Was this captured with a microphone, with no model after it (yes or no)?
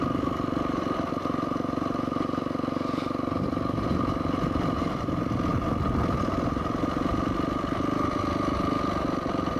yes